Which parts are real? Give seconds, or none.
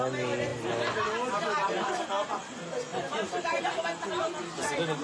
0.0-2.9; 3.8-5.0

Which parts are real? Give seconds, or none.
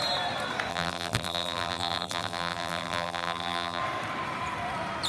0.0-0.7; 3.8-5.1